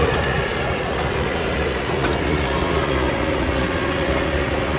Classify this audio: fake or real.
fake